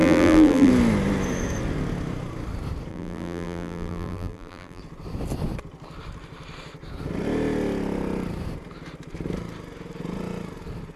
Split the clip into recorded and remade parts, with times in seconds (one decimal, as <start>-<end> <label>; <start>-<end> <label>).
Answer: 0.0-0.7 remade; 0.7-2.9 recorded; 2.9-4.8 remade; 4.8-11.0 recorded